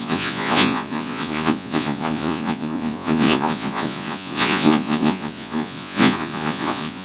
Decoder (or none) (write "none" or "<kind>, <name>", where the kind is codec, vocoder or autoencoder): vocoder, Vocos